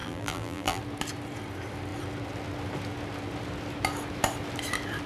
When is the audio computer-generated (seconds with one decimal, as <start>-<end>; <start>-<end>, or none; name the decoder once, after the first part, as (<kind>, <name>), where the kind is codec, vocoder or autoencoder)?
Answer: 0.0-0.8 (vocoder, BigVGAN v2)